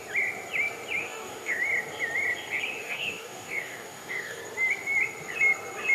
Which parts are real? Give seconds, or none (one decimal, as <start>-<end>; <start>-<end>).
0.0-1.0; 1.6-2.8; 4.4-5.9